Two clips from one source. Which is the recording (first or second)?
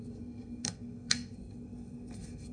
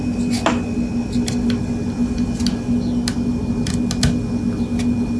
second